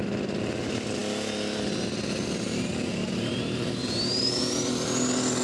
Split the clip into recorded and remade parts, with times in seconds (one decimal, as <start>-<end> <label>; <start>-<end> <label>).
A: 0.0-3.8 recorded; 3.8-4.4 remade; 4.4-5.4 recorded